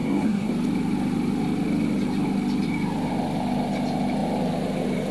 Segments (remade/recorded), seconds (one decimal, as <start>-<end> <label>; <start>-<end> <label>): 0.0-0.5 remade; 0.5-5.1 recorded